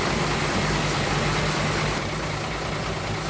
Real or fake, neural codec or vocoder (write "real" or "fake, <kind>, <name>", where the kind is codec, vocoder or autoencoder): real